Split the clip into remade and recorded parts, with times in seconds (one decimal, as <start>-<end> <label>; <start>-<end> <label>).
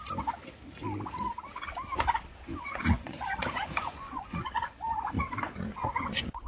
0.0-2.3 recorded; 2.3-6.5 remade